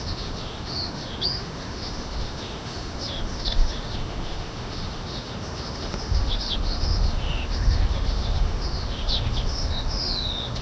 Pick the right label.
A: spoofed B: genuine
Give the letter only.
A